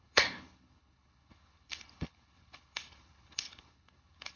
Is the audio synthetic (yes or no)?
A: yes